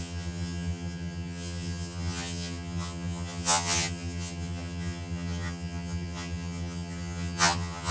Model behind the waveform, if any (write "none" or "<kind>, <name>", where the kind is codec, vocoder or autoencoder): vocoder, HiFi-GAN